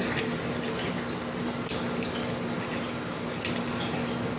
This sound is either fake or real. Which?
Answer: real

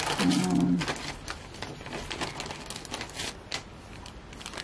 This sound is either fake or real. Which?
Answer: real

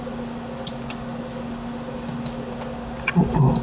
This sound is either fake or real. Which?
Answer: real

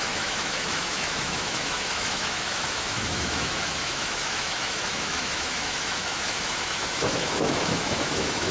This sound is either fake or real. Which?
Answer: fake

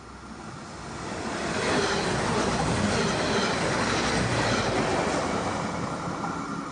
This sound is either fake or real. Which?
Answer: real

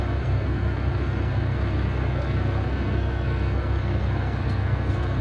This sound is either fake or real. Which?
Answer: fake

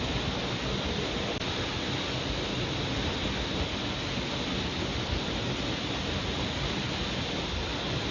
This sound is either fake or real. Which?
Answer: real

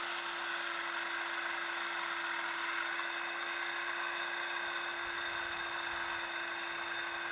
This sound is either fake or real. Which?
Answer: real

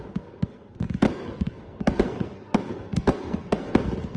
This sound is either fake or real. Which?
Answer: fake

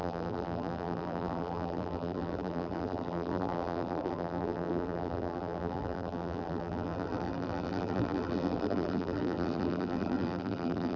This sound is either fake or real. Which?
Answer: fake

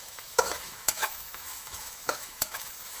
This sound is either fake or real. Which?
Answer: fake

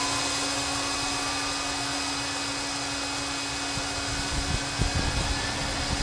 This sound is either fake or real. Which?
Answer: real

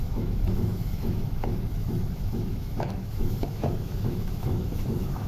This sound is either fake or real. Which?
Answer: fake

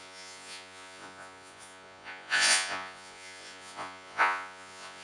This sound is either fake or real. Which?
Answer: fake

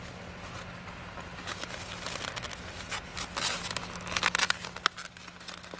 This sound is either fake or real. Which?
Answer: real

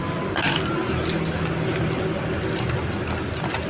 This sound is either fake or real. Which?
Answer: real